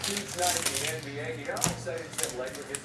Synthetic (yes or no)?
no